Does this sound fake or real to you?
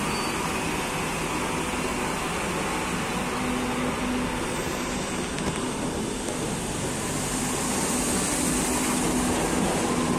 real